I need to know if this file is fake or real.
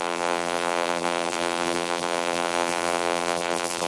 fake